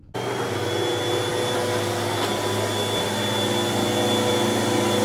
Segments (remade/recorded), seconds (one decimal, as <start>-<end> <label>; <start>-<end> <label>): 0.0-5.0 recorded